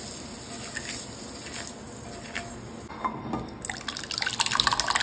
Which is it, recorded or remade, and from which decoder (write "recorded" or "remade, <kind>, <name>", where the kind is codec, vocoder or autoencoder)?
recorded